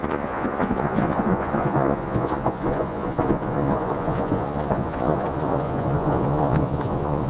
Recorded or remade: remade